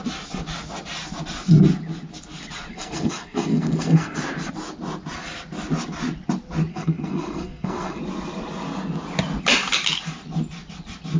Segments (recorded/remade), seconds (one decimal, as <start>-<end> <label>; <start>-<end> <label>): 0.0-2.7 recorded; 2.7-4.2 remade; 4.2-6.7 recorded; 6.7-8.0 remade; 8.0-11.2 recorded